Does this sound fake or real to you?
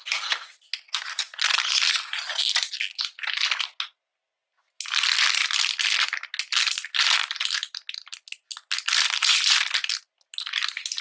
real